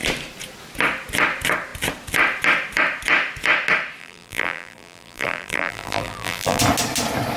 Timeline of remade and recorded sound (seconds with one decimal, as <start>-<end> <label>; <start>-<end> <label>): 0.0-4.0 recorded; 4.0-6.6 remade; 6.6-7.4 recorded